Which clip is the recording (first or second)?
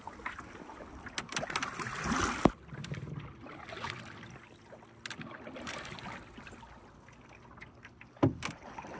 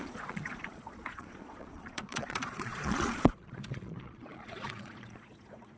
first